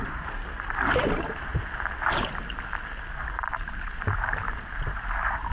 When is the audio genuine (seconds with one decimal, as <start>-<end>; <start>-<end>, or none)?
0.4-1.0; 1.5-3.1; 4.4-5.5